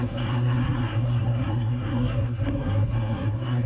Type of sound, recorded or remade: remade